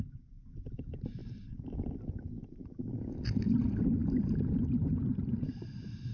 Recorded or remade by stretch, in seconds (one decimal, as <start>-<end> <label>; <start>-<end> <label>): 0.0-6.1 recorded